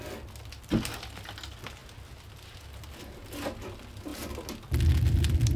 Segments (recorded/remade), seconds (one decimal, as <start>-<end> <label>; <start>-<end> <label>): 0.0-5.6 recorded